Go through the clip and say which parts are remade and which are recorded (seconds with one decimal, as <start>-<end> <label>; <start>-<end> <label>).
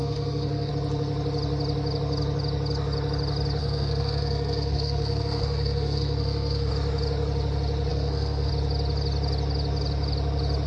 0.0-0.7 remade; 0.7-3.6 recorded; 3.6-6.7 remade; 6.7-7.9 recorded; 7.9-8.5 remade; 8.5-10.7 recorded